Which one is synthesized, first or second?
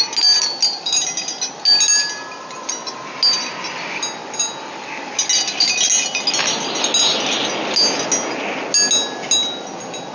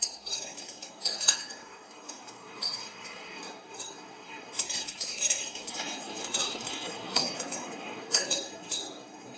second